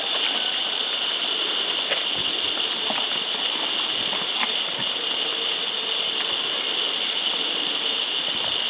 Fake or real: real